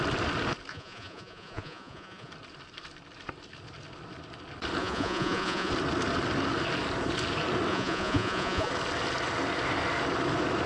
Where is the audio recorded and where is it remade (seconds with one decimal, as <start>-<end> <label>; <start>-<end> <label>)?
0.0-0.7 recorded; 0.7-2.3 remade; 2.3-4.8 recorded; 4.8-5.7 remade; 5.7-7.7 recorded; 7.7-8.7 remade; 8.7-10.7 recorded